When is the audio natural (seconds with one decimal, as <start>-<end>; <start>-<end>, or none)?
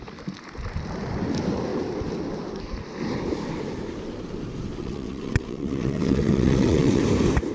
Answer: 0.0-4.8; 7.0-7.5